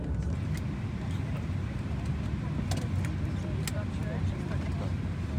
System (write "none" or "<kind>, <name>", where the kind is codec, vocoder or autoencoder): none